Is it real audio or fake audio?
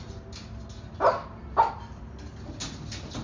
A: real